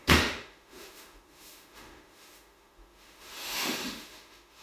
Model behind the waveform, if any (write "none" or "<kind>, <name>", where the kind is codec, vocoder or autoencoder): autoencoder, DAC-VAE